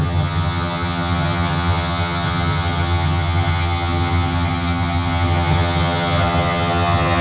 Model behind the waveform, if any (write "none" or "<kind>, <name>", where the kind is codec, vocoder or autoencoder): vocoder, HiFi-GAN